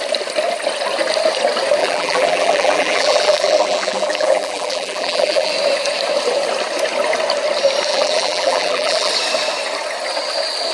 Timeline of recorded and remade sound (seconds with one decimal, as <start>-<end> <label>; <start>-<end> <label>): 0.0-1.8 recorded; 1.8-5.5 remade; 5.5-7.9 recorded; 7.9-9.1 remade; 9.1-10.7 recorded